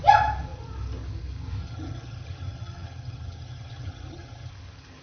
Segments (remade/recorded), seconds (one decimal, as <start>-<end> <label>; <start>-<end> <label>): 0.0-1.6 recorded; 1.6-4.5 remade; 4.5-5.0 recorded